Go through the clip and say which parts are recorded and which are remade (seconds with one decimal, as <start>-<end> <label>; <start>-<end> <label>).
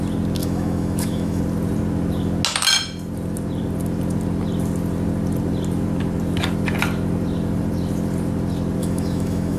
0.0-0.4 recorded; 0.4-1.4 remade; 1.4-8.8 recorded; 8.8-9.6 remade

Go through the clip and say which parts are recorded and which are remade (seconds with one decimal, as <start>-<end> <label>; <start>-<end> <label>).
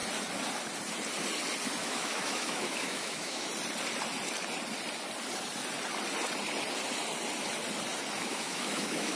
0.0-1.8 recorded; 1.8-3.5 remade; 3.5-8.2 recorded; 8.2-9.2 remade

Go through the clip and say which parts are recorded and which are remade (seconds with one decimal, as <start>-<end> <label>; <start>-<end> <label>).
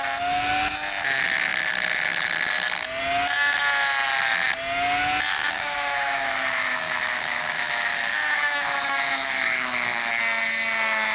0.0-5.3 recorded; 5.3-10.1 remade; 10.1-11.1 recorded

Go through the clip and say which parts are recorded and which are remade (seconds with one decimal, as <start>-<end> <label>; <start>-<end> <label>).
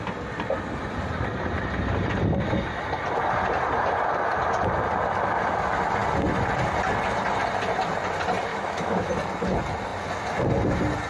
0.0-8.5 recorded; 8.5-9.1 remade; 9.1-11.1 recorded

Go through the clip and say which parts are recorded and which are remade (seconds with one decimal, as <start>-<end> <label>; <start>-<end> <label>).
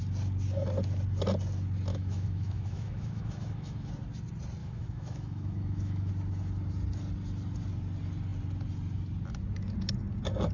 0.0-1.9 recorded; 1.9-3.9 remade; 3.9-4.6 recorded; 4.6-6.1 remade; 6.1-10.5 recorded